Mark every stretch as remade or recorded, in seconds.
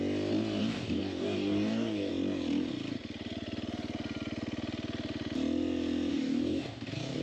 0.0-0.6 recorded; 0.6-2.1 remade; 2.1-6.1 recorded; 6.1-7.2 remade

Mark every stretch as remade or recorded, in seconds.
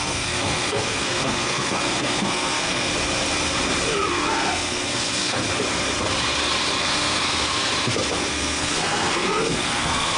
0.0-2.9 remade; 2.9-4.1 recorded; 4.1-5.4 remade; 5.4-6.8 recorded; 6.8-7.7 remade; 7.7-8.3 recorded; 8.3-10.2 remade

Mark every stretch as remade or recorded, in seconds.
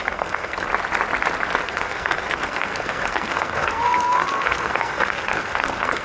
0.0-0.7 remade; 0.7-1.6 recorded; 1.6-6.0 remade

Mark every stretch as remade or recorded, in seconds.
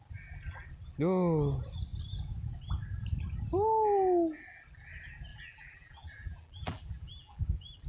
0.0-5.3 recorded; 5.3-7.4 remade; 7.4-7.9 recorded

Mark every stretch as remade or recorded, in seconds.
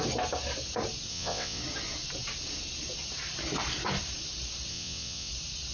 0.0-1.1 recorded; 1.1-1.6 remade; 1.6-4.7 recorded; 4.7-5.3 remade; 5.3-5.7 recorded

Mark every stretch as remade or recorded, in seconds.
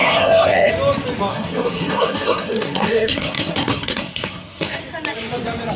0.0-0.7 remade; 0.7-1.3 recorded; 1.3-4.8 remade; 4.8-5.8 recorded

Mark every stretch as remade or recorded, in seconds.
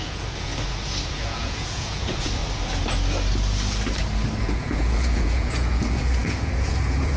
0.0-0.5 remade; 0.5-1.1 recorded; 1.1-2.4 remade; 2.4-4.4 recorded; 4.4-7.2 remade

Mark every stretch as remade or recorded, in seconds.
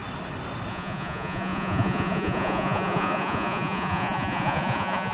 0.0-0.7 recorded; 0.7-5.1 remade